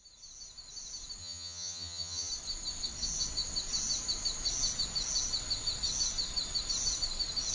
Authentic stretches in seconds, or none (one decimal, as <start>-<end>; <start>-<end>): 0.0-1.2; 2.3-7.5